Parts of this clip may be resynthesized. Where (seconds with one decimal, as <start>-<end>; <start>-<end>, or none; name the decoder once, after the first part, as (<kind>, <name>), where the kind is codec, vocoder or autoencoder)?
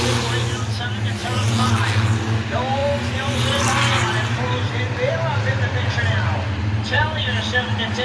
none